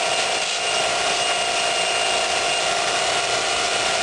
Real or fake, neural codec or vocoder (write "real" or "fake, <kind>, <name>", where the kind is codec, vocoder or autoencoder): real